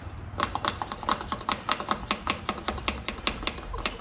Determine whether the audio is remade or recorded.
recorded